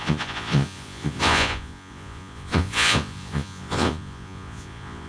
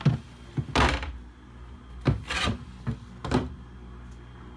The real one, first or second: second